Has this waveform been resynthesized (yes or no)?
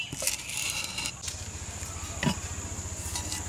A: no